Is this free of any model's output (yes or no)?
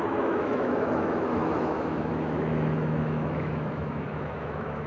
no